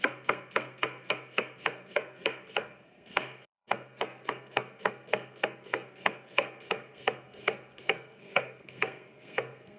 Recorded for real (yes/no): no